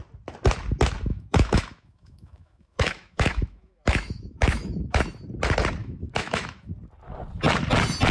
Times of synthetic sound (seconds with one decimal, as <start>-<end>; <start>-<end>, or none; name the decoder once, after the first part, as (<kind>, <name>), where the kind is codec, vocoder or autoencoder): 1.1-5.0 (autoencoder, DAC-VAE); 5.8-6.7